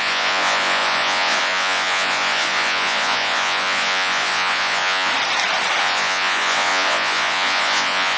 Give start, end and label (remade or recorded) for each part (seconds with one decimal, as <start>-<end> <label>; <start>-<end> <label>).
0.0-5.1 remade; 5.1-5.8 recorded; 5.8-8.2 remade